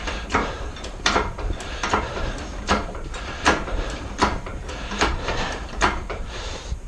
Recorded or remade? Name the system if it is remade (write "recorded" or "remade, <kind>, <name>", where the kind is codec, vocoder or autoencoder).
remade, vocoder, BigVGAN v2